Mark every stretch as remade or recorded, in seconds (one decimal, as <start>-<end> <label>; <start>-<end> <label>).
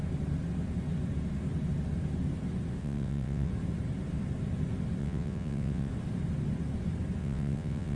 0.0-2.8 recorded; 2.8-3.5 remade; 3.5-5.0 recorded; 5.0-5.9 remade; 5.9-7.2 recorded; 7.2-8.0 remade